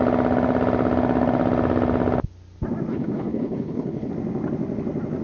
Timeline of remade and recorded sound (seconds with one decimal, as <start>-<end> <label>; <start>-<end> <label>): 0.0-2.9 recorded; 2.9-4.1 remade; 4.1-5.2 recorded